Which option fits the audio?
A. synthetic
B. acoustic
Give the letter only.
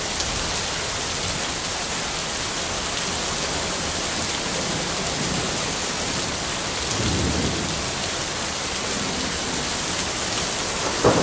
B